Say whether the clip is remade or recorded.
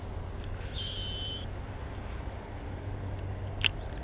recorded